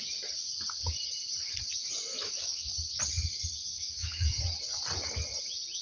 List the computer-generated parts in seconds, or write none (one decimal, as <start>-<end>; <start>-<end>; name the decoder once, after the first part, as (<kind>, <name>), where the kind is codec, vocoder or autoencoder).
2.1-3.0 (autoencoder, DAC-VAE); 3.6-4.4